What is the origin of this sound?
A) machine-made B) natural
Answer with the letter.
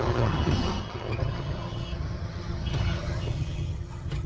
A